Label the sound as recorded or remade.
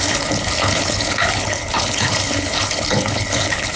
remade